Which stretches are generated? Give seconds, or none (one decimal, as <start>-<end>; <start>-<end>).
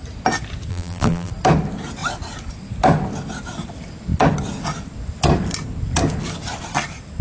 0.7-1.3